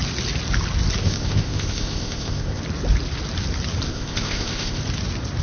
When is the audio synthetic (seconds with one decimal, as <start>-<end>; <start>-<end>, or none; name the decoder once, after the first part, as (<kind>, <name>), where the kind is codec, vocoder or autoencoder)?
1.0-2.6 (codec, ZipCodec); 3.9-4.8